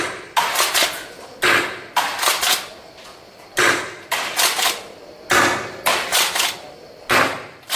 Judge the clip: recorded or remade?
recorded